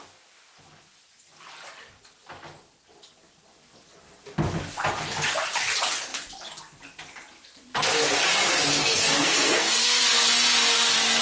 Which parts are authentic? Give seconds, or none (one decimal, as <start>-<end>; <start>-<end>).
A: 0.0-8.8; 10.0-11.2